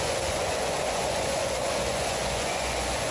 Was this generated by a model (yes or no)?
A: yes